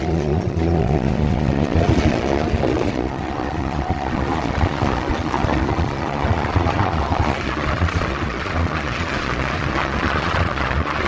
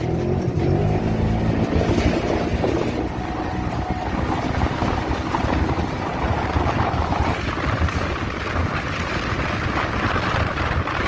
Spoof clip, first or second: first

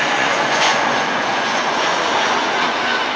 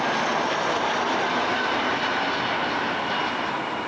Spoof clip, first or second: first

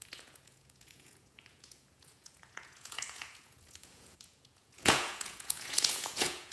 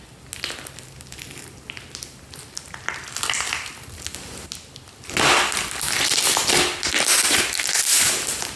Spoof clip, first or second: first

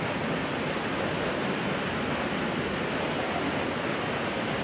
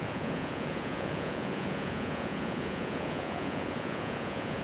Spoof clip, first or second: second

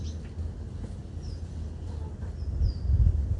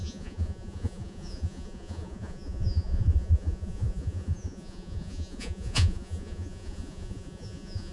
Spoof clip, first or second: second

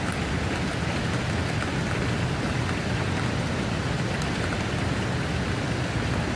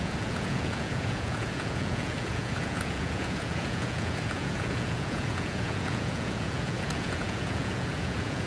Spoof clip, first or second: second